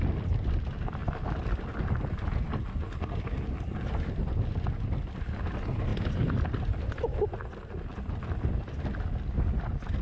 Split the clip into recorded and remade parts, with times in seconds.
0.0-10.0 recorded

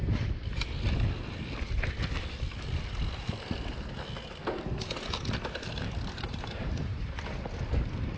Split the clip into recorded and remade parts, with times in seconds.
0.0-5.6 recorded; 5.6-7.2 remade; 7.2-8.2 recorded

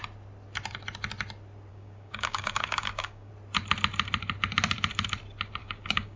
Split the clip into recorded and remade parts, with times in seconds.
0.0-1.7 recorded; 1.7-3.3 remade; 3.3-5.6 recorded; 5.6-6.2 remade